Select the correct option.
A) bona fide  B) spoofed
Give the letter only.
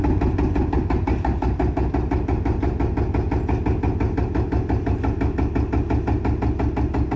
A